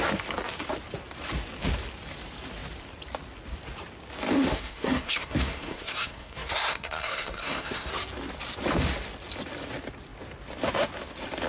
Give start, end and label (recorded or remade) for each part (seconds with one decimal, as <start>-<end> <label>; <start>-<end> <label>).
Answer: 0.0-4.5 recorded; 4.5-7.9 remade; 7.9-11.5 recorded